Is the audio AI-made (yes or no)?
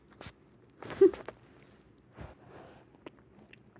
no